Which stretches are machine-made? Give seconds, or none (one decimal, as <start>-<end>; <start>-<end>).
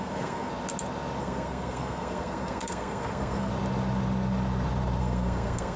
0.0-0.5; 1.2-3.5; 5.0-5.8